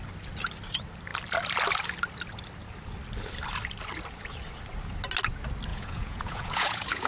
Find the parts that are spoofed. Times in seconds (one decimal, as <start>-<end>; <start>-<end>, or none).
5.7-7.1